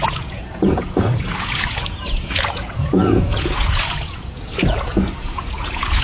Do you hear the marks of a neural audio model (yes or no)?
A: yes